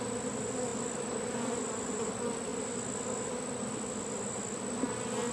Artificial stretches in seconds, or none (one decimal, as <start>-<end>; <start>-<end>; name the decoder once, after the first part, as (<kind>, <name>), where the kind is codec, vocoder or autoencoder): 0.7-2.1 (vocoder, BigVGAN v2)